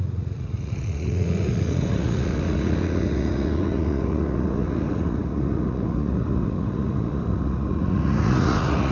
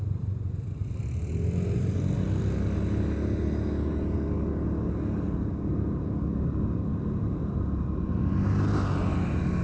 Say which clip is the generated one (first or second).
first